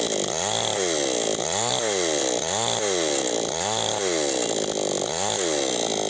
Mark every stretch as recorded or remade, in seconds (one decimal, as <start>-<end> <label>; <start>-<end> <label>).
0.0-6.1 recorded